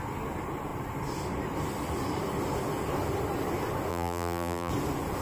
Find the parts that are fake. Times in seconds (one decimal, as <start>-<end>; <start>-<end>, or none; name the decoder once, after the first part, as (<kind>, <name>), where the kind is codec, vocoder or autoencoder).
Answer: 3.9-4.7 (vocoder, BigVGAN v2)